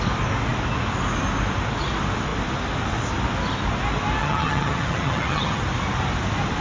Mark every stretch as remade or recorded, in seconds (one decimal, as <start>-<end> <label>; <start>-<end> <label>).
0.0-4.2 recorded; 4.2-5.6 remade; 5.6-6.6 recorded